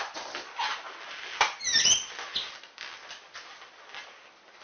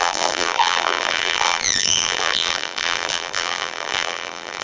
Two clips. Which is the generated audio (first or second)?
second